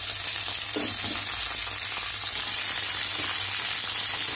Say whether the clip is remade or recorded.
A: recorded